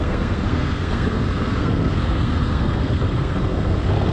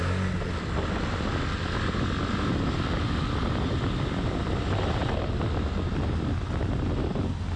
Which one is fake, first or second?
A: first